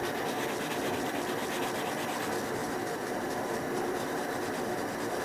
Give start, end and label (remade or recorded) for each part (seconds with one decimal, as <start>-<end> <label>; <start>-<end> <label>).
0.0-2.6 recorded; 2.6-5.2 remade